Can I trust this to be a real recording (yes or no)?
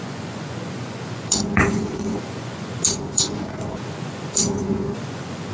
no